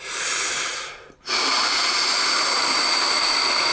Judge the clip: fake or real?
fake